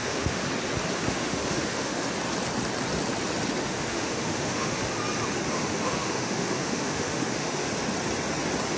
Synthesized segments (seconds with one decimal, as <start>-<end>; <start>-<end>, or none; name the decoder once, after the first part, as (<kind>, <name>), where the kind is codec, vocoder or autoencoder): 0.0-0.4 (autoencoder, DAC-VAE); 0.9-2.0; 3.6-4.8; 5.5-7.6